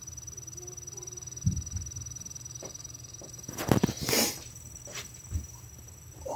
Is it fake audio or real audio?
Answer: real